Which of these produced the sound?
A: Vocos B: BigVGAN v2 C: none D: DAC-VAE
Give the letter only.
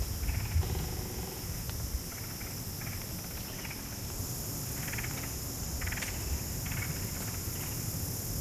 C